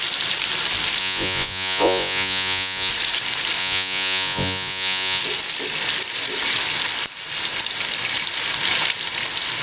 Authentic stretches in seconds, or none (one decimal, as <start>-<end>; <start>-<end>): 0.0-1.0; 2.9-3.6; 5.2-9.6